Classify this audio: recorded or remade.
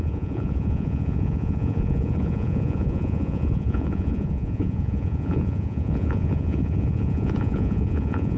remade